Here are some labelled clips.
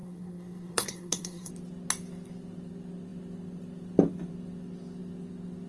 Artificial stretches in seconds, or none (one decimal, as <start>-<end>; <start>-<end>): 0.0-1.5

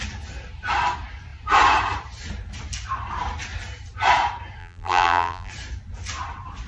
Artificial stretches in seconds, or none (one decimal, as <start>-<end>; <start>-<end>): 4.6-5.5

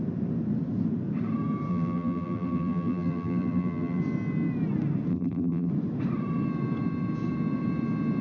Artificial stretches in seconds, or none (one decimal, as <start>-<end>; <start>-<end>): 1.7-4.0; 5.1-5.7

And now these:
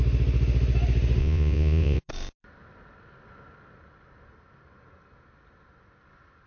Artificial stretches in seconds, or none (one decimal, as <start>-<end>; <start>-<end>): 1.2-2.1